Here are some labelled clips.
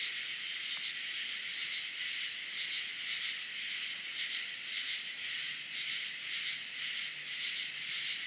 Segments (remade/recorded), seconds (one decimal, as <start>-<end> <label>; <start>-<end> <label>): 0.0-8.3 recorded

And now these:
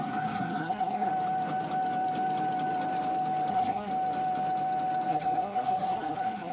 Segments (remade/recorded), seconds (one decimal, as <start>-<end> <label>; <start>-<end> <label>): 0.0-1.1 remade; 1.1-3.5 recorded; 3.5-3.9 remade; 3.9-5.1 recorded; 5.1-6.5 remade

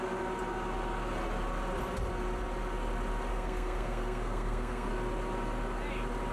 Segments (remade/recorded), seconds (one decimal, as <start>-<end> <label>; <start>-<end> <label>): 0.0-3.3 recorded; 3.3-4.9 remade; 4.9-6.3 recorded

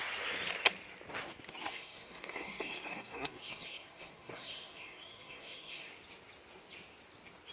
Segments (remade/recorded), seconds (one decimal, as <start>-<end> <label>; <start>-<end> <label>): 0.0-1.7 recorded; 1.7-5.9 remade; 5.9-7.5 recorded

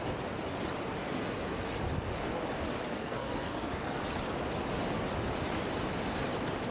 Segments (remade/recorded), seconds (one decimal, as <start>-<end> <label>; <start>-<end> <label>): 0.0-1.0 recorded; 1.0-1.7 remade; 1.7-2.9 recorded; 2.9-4.0 remade; 4.0-6.7 recorded